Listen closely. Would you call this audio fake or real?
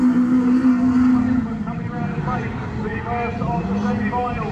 real